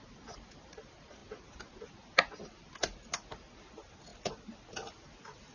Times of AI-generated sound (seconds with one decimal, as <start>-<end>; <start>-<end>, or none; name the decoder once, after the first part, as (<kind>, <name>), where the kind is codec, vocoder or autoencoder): none